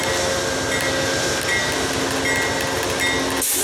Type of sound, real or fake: real